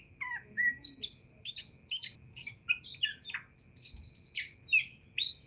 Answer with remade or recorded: recorded